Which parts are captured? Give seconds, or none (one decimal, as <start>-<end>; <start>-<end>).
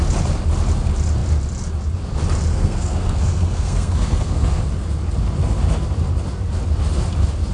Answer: 0.0-2.5; 4.6-7.5